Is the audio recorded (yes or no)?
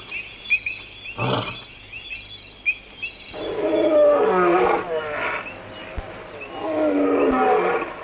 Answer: yes